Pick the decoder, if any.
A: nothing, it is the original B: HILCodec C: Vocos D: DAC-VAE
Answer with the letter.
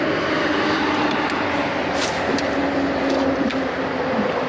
A